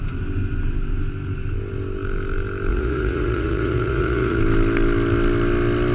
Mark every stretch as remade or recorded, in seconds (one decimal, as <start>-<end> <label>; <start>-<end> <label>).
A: 0.0-2.7 recorded; 2.7-4.4 remade; 4.4-5.9 recorded

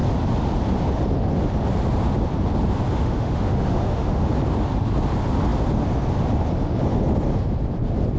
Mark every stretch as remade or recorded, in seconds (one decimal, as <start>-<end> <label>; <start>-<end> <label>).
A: 0.0-2.9 recorded; 2.9-4.3 remade; 4.3-8.2 recorded

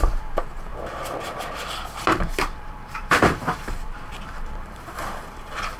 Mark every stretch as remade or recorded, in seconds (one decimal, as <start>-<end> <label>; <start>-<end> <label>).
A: 0.0-0.7 remade; 0.7-2.2 recorded; 2.2-5.8 remade

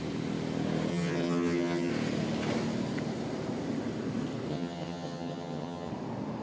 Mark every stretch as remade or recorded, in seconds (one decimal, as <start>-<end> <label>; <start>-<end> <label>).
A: 0.0-0.9 recorded; 0.9-1.9 remade; 1.9-4.5 recorded; 4.5-5.9 remade; 5.9-6.4 recorded

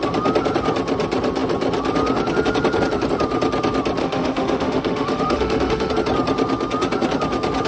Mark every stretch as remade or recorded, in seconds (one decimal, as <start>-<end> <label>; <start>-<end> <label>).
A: 0.0-4.0 recorded; 4.0-5.9 remade; 5.9-7.7 recorded